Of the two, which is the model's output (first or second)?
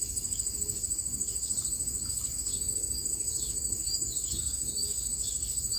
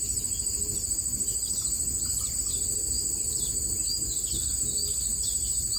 first